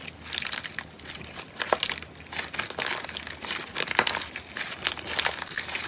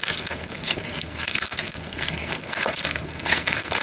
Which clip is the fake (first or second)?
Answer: second